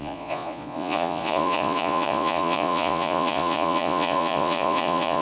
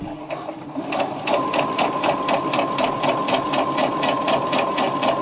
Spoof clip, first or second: first